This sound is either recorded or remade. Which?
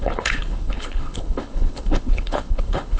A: remade